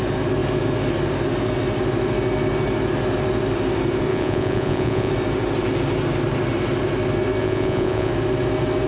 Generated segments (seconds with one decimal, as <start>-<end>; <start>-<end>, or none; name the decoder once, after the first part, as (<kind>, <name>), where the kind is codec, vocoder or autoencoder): 4.1-5.1 (vocoder, Vocos); 7.4-8.1